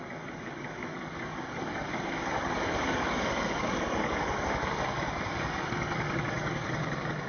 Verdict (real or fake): fake